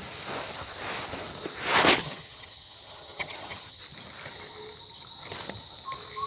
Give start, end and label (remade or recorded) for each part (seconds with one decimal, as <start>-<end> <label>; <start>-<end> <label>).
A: 0.0-2.0 recorded; 2.0-3.8 remade; 3.8-6.3 recorded